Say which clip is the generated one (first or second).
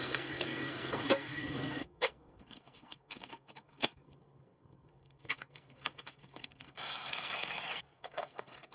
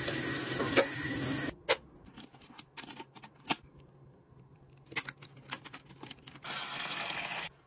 first